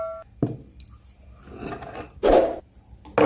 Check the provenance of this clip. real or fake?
real